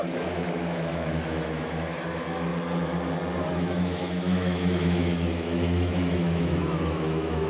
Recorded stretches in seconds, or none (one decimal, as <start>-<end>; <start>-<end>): 2.5-3.5